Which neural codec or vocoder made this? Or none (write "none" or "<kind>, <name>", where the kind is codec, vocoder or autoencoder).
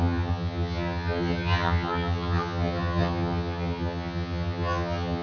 vocoder, HiFi-GAN